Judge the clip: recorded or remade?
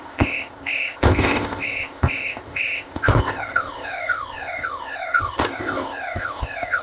remade